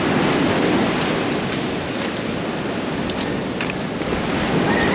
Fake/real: real